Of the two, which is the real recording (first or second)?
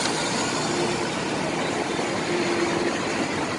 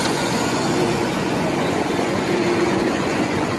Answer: first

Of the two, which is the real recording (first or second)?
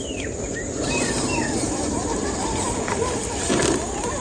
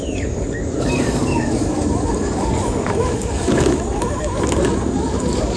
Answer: first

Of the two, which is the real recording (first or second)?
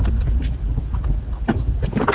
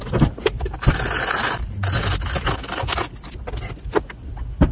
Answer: second